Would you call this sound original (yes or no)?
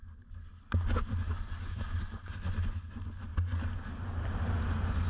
yes